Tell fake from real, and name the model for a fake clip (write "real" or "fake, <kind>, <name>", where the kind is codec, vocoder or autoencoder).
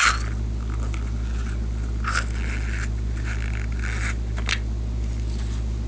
real